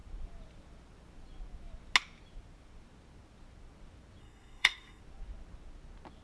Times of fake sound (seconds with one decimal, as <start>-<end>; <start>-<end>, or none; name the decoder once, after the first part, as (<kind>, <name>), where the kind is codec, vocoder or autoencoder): 4.2-5.0 (codec, SNAC)